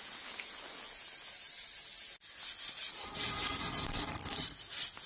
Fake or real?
real